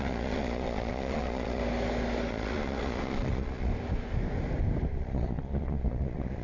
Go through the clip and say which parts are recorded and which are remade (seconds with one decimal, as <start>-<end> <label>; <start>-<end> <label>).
0.0-1.6 remade; 1.6-2.3 recorded; 2.3-3.7 remade; 3.7-4.9 recorded; 4.9-6.4 remade